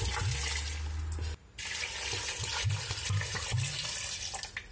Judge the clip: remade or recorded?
recorded